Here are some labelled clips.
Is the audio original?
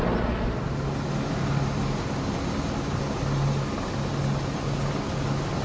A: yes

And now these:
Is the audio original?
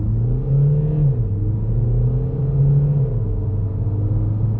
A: yes